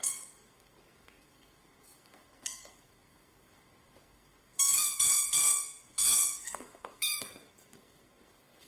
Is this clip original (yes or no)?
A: no